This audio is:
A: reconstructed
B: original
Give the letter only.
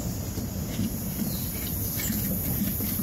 B